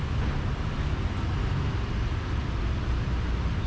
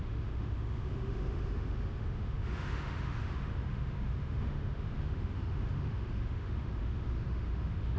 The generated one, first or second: second